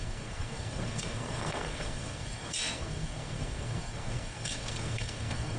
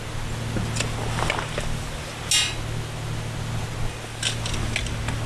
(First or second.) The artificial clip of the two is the first